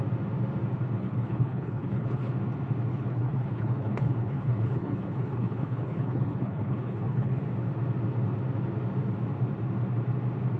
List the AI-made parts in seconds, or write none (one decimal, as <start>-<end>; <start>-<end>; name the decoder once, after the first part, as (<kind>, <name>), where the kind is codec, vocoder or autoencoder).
1.0-2.3 (codec, HILCodec); 2.9-7.4